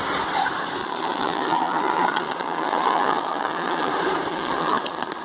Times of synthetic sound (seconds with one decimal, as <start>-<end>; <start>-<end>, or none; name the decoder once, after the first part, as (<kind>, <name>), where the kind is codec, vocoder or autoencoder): 0.8-3.9 (vocoder, Vocos); 4.3-5.2